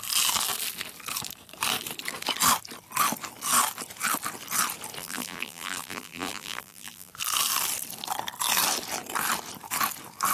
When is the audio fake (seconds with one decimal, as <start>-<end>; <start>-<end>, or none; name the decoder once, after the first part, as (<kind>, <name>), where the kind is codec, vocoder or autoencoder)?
5.0-7.1 (vocoder, BigVGAN v2)